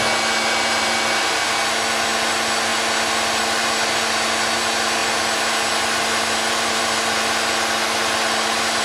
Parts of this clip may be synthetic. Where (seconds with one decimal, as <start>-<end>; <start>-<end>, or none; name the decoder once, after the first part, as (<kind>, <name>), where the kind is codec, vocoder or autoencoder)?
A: none